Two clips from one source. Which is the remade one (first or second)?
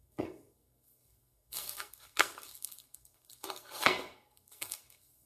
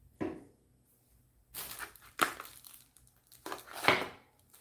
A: first